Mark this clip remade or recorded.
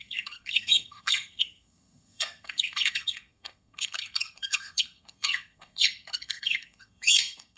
remade